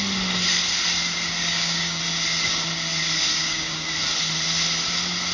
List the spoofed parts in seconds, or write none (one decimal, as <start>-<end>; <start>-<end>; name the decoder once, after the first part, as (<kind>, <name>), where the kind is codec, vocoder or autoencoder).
1.4-2.0 (codec, DAC); 3.3-3.9